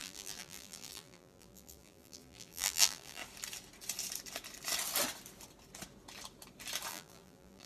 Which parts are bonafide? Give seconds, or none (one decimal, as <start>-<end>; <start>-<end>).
3.2-6.9